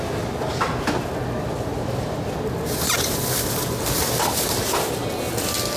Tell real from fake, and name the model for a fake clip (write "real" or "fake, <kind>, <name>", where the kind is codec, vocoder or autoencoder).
real